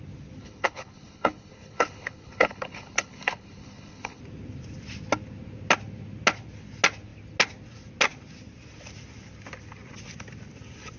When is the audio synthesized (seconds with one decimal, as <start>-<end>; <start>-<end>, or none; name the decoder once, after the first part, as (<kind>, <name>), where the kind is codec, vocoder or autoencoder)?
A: 0.4-4.2 (codec, HILCodec)